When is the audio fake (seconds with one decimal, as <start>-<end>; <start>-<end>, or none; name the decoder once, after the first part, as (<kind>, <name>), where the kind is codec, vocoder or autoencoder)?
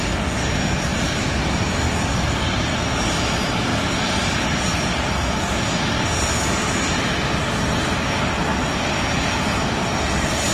0.9-1.5 (vocoder, BigVGAN v2)